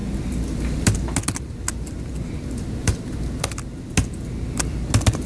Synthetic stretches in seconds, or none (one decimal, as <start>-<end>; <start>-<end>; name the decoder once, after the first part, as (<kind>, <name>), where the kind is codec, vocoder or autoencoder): none